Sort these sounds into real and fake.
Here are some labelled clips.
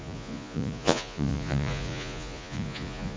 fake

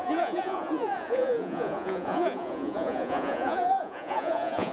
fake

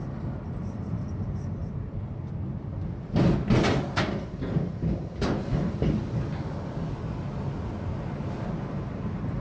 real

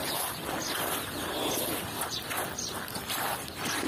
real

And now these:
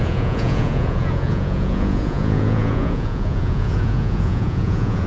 fake